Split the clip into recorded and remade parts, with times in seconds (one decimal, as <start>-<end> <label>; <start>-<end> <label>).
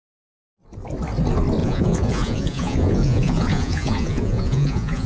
0.0-1.6 recorded; 1.6-5.1 remade